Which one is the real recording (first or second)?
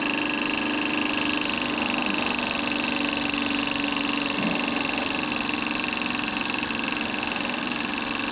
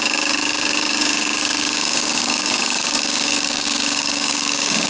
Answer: first